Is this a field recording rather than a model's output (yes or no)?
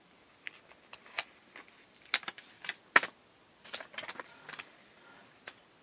yes